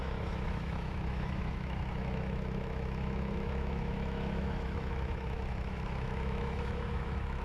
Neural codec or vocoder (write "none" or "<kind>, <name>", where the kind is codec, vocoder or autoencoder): autoencoder, DAC-VAE